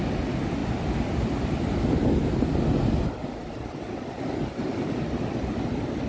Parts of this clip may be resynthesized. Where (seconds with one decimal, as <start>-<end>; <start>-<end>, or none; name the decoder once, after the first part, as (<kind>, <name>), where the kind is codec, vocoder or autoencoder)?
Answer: none